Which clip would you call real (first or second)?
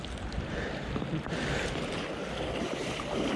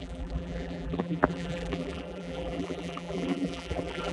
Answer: first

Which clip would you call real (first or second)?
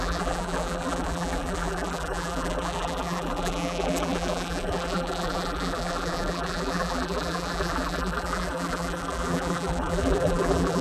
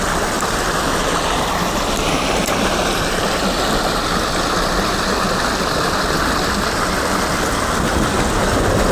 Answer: second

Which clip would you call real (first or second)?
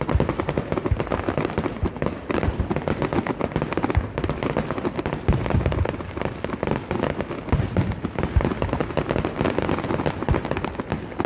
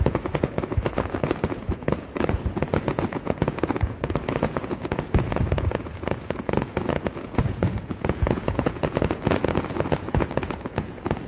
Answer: first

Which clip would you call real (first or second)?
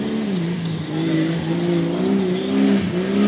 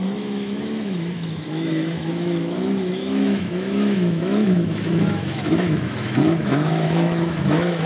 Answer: first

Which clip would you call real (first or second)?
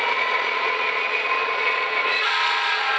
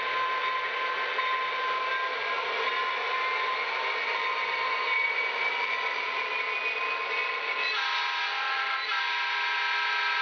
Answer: second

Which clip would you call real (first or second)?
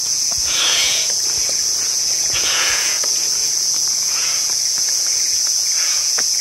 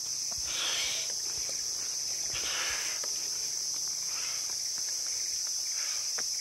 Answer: second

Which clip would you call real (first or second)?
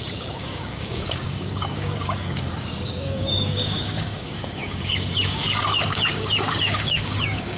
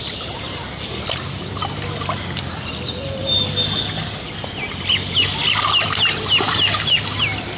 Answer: second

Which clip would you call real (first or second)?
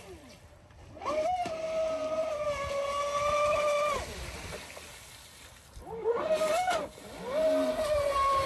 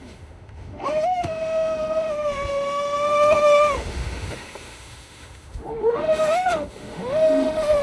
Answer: first